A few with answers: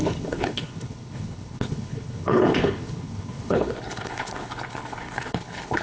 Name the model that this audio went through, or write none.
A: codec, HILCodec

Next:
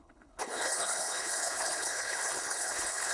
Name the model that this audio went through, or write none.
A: codec, HILCodec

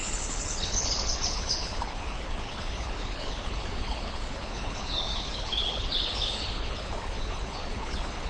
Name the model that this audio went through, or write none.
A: codec, HILCodec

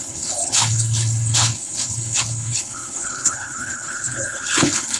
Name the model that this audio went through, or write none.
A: codec, HILCodec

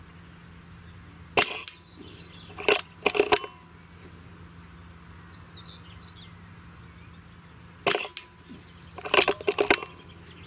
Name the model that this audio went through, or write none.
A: none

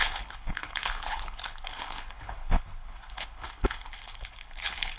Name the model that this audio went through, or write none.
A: codec, HILCodec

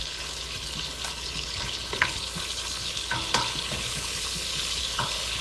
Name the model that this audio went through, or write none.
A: codec, HILCodec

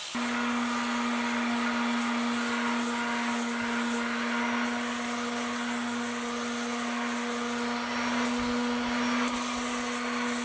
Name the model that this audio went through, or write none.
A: none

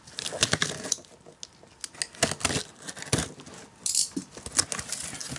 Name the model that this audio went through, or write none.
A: none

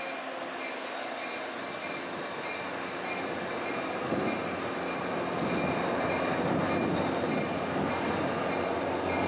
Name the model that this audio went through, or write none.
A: none